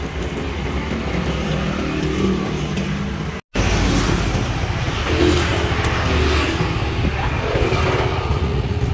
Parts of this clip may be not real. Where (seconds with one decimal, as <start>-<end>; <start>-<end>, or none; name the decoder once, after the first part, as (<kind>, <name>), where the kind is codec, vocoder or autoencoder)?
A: 8.1-8.9 (vocoder, Vocos)